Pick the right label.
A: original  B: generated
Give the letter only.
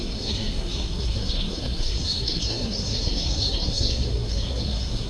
B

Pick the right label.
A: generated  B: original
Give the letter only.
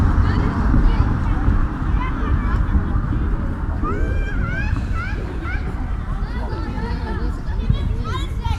A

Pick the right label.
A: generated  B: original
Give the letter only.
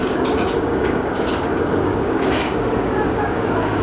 A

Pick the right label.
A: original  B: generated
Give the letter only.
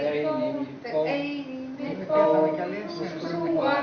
A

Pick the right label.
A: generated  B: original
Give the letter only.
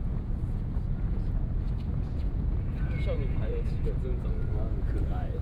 A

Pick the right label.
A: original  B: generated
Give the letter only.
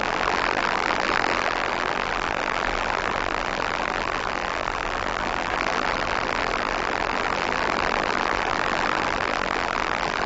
B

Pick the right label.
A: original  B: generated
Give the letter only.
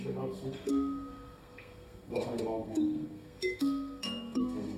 B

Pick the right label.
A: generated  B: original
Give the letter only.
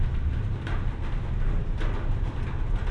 B